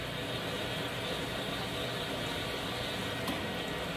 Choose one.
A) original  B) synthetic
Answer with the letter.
A